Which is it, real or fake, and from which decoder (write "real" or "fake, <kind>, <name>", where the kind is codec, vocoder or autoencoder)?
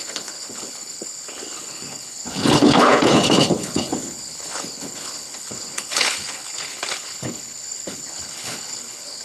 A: fake, codec, HILCodec